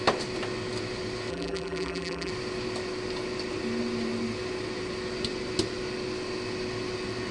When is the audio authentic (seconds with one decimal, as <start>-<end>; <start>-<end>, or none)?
0.0-1.3; 2.3-7.3